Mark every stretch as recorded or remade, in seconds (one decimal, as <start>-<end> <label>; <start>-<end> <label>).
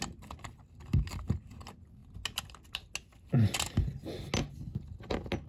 0.0-5.5 recorded